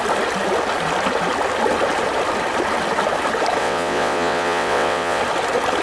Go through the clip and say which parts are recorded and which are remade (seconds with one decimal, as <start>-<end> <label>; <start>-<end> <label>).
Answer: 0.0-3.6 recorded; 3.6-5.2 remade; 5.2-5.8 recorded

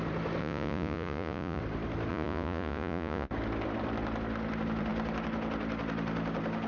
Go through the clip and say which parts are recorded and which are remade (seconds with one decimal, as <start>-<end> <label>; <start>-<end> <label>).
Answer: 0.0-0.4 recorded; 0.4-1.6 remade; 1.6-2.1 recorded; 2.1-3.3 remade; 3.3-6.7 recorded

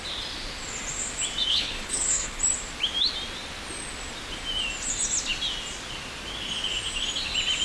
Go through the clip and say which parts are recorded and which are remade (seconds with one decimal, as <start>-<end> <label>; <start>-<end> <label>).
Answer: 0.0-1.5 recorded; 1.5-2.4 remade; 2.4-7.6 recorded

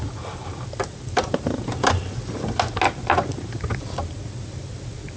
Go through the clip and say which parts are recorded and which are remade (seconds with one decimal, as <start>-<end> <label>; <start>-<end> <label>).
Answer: 0.0-5.2 recorded

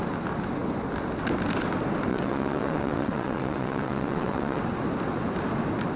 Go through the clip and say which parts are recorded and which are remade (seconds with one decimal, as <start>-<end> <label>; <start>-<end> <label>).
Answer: 0.0-2.1 recorded; 2.1-4.6 remade; 4.6-6.0 recorded

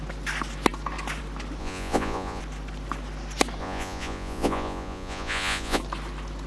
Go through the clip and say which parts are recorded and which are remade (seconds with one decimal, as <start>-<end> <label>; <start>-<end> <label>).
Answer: 0.0-1.6 recorded; 1.6-2.4 remade; 2.4-3.6 recorded; 3.6-5.8 remade; 5.8-6.5 recorded

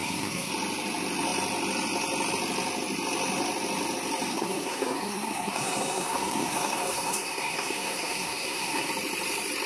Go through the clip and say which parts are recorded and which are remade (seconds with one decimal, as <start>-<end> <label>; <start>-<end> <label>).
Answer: 0.0-0.5 remade; 0.5-4.3 recorded; 4.3-8.9 remade; 8.9-9.7 recorded

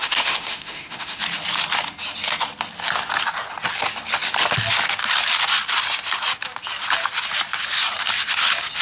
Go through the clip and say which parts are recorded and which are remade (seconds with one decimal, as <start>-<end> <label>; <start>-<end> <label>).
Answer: 0.0-1.2 remade; 1.2-8.8 recorded